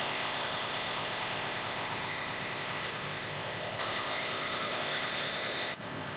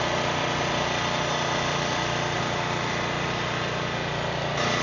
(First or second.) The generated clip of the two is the first